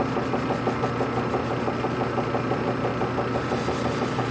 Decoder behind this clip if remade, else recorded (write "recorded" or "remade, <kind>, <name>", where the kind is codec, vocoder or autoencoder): recorded